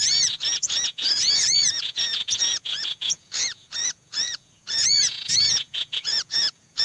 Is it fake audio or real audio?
fake